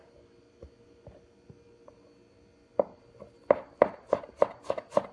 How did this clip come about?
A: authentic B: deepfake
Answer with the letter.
A